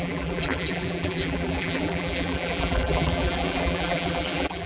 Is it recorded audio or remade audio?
remade